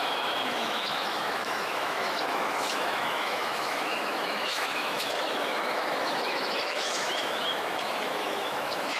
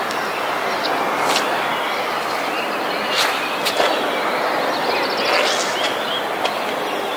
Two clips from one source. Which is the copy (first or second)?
first